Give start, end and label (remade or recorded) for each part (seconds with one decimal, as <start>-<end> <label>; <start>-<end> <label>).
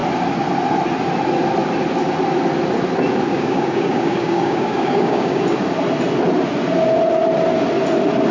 0.0-3.3 recorded; 3.3-5.4 remade; 5.4-8.3 recorded